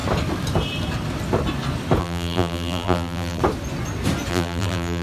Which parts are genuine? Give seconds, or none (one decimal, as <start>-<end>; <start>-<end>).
0.0-2.0; 3.4-4.3